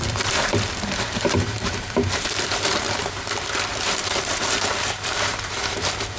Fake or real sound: fake